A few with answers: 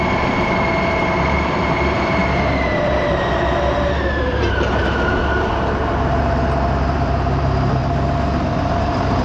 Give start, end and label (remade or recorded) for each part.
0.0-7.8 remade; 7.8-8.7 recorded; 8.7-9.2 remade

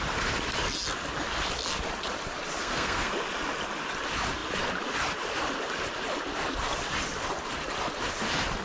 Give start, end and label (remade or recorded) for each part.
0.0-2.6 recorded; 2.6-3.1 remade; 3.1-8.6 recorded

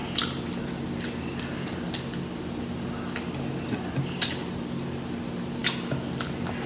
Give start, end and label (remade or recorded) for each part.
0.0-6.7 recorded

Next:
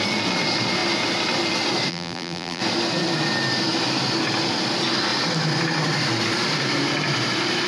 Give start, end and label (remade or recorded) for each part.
0.0-1.9 recorded; 1.9-2.6 remade; 2.6-7.7 recorded

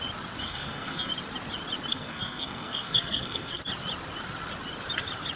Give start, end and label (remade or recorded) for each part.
0.0-0.4 recorded; 0.4-1.1 remade; 1.1-1.9 recorded; 1.9-3.6 remade; 3.6-5.4 recorded

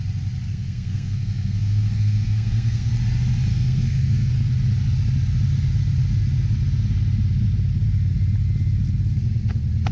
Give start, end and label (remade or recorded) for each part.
0.0-0.5 recorded; 0.5-2.9 remade; 2.9-3.5 recorded; 3.5-4.3 remade; 4.3-9.9 recorded

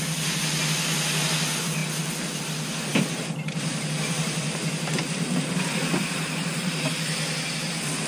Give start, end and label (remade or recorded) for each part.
0.0-2.9 recorded; 2.9-4.7 remade; 4.7-8.1 recorded